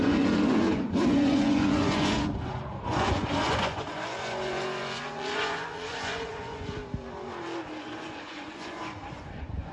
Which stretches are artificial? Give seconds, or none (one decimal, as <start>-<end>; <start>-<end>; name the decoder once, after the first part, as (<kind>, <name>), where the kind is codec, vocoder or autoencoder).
0.0-6.8 (vocoder, Vocos); 7.8-9.7